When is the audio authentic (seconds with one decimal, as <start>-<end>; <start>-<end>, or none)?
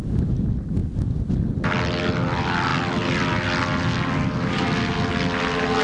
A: 0.0-5.8